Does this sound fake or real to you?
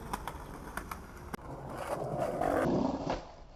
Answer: real